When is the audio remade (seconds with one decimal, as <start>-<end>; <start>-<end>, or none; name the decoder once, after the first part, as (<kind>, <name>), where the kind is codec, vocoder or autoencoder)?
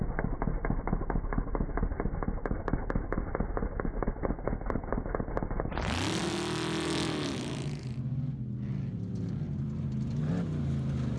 8.9-10.3 (vocoder, BigVGAN v2)